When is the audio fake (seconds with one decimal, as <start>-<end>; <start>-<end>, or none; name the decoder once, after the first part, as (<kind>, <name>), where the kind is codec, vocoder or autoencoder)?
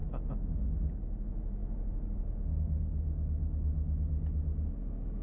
none